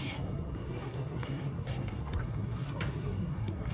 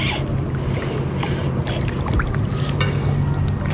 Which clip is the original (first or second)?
second